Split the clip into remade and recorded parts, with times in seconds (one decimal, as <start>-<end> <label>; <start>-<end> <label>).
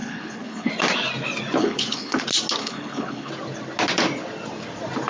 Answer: 0.0-0.7 remade; 0.7-1.6 recorded; 1.6-2.2 remade; 2.2-2.6 recorded; 2.6-3.3 remade; 3.3-5.1 recorded